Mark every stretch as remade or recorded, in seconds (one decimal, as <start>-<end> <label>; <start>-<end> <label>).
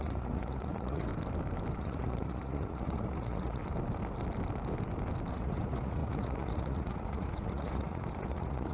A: 0.0-1.1 remade; 1.1-1.8 recorded; 1.8-3.6 remade; 3.6-5.3 recorded; 5.3-8.7 remade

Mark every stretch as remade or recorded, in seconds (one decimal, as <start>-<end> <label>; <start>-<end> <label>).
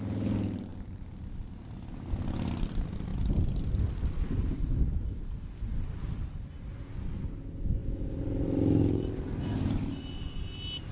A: 0.0-10.9 recorded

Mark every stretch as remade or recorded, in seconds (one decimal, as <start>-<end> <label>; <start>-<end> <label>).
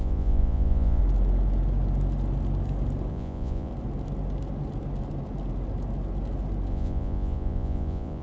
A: 0.0-1.0 remade; 1.0-3.1 recorded; 3.1-3.7 remade; 3.7-6.7 recorded; 6.7-8.2 remade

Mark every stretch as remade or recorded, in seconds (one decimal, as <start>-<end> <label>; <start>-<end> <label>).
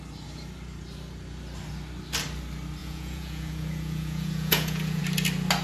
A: 0.0-2.8 recorded; 2.8-5.0 remade; 5.0-5.6 recorded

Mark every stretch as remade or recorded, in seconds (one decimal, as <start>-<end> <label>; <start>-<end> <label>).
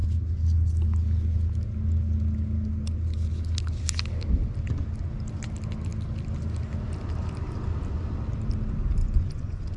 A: 0.0-9.0 recorded; 9.0-9.8 remade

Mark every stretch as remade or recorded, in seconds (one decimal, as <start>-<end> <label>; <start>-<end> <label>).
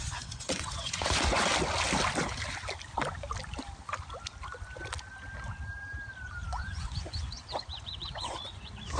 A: 0.0-1.5 remade; 1.5-6.5 recorded; 6.5-9.0 remade